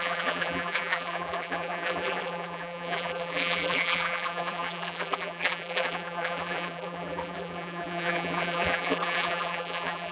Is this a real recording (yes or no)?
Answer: no